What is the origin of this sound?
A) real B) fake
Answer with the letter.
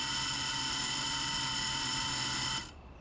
A